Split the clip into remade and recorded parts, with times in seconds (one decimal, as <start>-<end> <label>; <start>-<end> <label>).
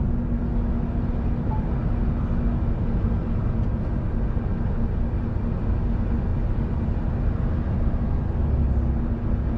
0.0-9.6 recorded